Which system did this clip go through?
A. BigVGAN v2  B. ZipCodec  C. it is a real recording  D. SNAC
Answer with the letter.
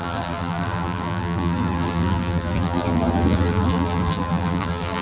A